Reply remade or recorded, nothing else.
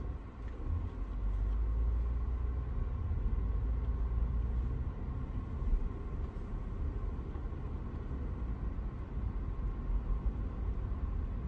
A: recorded